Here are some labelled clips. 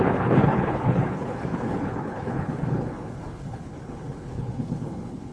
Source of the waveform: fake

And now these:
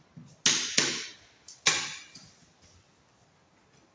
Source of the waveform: real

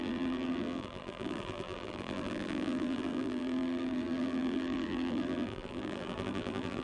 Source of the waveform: fake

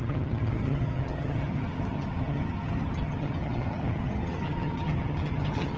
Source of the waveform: fake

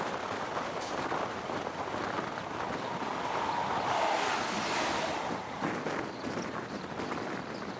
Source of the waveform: real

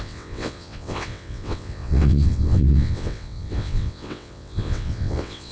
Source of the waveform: fake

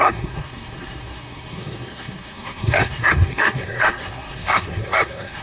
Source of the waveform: fake